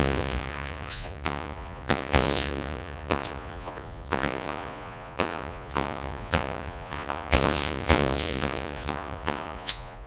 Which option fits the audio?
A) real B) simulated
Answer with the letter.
B